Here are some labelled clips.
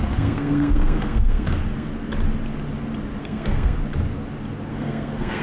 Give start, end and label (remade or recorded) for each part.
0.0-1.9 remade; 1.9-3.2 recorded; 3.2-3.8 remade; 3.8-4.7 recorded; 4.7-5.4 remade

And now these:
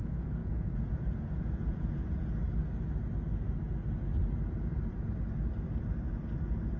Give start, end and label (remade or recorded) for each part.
0.0-2.3 remade; 2.3-6.8 recorded

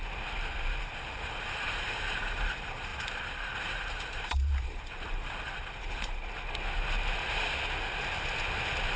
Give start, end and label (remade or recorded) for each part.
0.0-0.8 recorded; 0.8-6.2 remade; 6.2-9.0 recorded

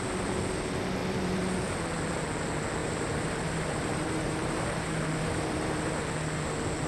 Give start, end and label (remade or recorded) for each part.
0.0-1.0 recorded; 1.0-1.8 remade; 1.8-2.8 recorded; 2.8-5.9 remade; 5.9-6.9 recorded

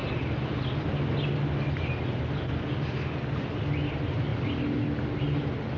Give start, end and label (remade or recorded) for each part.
0.0-5.8 recorded

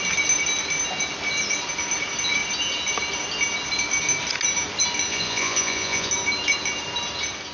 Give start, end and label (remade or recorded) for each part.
0.0-5.1 recorded; 5.1-6.1 remade; 6.1-7.5 recorded

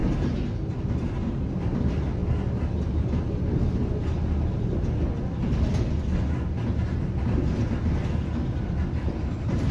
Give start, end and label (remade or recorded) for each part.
0.0-9.7 recorded

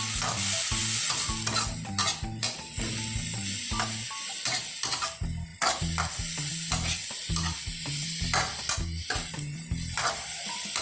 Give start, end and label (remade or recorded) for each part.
0.0-10.8 recorded